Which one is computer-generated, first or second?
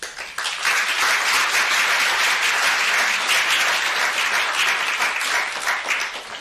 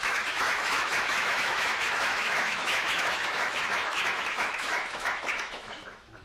second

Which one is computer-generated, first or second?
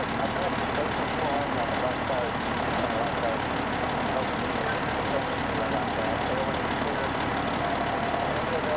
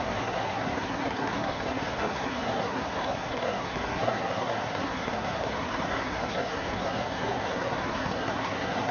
second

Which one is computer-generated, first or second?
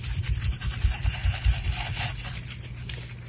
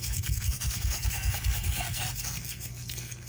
second